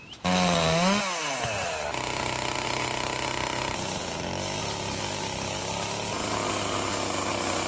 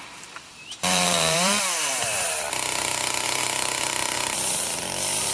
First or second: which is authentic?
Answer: first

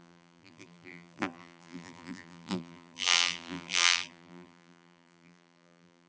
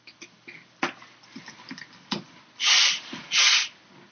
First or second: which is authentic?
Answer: second